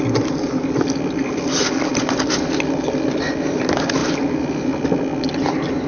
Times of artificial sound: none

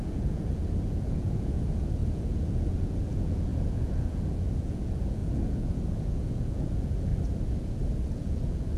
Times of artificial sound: 0.0-7.1 (vocoder, Vocos); 8.1-8.8

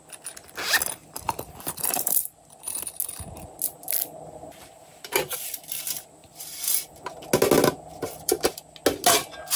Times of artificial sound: 1.0-2.6 (vocoder, BigVGAN v2); 6.2-6.8; 7.9-8.6

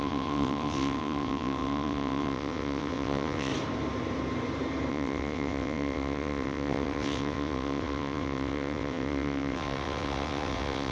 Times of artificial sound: 0.0-3.5 (vocoder, WaveNeXt); 4.9-10.9

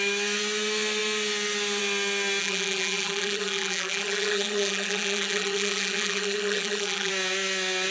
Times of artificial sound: 2.4-7.1 (vocoder, BigVGAN v2)